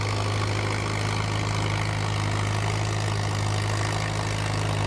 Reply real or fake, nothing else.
real